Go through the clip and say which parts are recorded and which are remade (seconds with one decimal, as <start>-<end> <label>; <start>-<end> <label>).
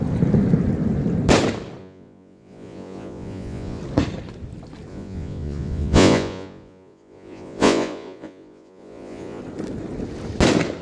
0.0-1.8 recorded; 1.8-3.8 remade; 3.8-4.9 recorded; 4.9-9.4 remade; 9.4-10.8 recorded